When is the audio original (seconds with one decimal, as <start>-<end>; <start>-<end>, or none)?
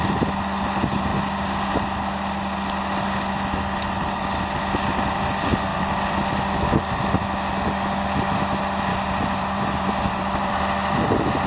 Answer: 0.0-8.9; 10.5-11.5